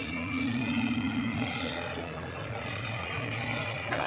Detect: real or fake fake